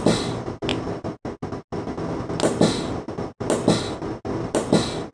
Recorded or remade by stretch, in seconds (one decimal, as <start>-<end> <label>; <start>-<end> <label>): 0.0-5.1 recorded